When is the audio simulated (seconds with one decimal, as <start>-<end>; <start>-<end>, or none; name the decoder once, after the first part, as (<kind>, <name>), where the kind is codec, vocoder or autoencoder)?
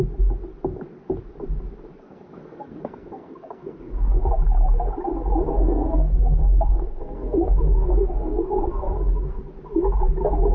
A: 1.9-4.3 (codec, SNAC); 5.5-9.4